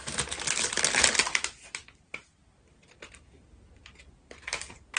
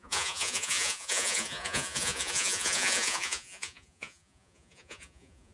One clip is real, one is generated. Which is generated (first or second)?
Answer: second